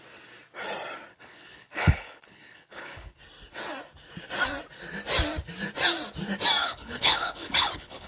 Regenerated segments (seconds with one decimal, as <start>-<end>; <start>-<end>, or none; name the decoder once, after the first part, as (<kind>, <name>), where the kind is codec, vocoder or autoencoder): 1.1-3.2 (codec, HILCodec); 6.6-8.1